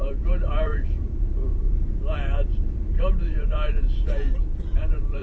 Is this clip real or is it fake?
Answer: fake